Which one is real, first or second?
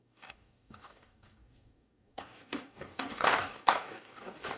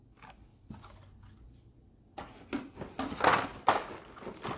second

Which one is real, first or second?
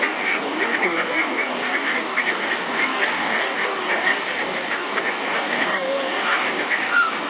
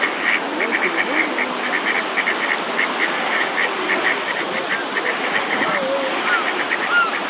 second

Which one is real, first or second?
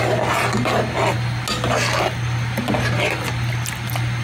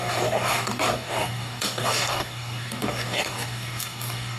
first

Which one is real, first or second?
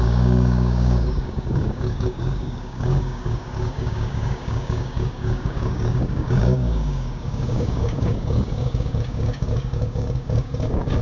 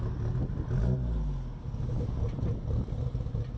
second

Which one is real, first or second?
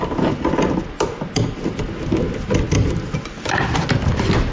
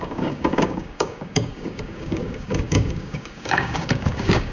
first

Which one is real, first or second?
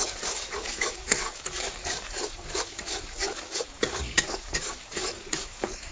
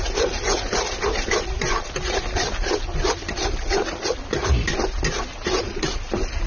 second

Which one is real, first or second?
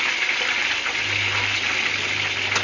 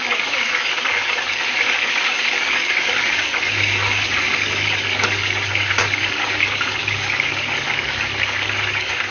first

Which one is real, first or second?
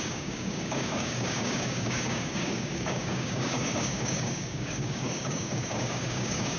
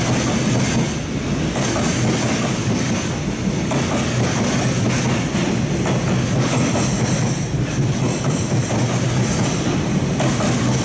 second